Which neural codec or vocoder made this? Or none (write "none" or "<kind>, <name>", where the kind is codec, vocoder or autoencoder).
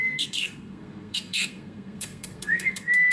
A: codec, SNAC